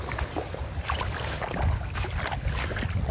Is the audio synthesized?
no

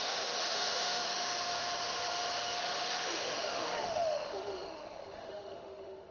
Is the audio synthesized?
yes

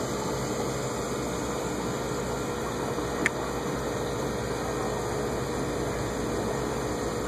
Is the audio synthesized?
no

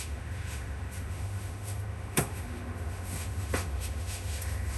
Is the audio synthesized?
yes